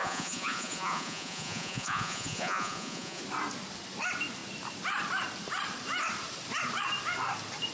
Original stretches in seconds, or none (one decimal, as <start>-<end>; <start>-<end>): 3.2-7.7